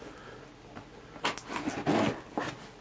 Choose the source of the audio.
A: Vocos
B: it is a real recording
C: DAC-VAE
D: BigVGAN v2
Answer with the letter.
B